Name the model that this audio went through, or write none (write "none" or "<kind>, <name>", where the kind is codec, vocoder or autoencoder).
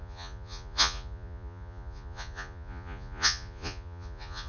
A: vocoder, Vocos